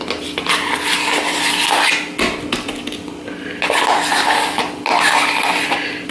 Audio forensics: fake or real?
real